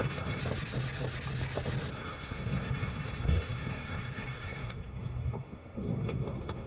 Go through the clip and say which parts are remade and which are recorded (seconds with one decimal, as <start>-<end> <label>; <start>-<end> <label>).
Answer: 0.0-0.4 remade; 0.4-1.9 recorded; 1.9-6.7 remade